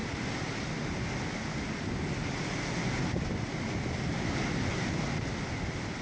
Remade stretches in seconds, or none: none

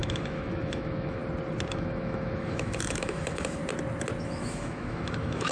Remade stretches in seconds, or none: 0.0-1.2 (autoencoder, DAC-VAE); 1.7-3.6; 4.2-5.5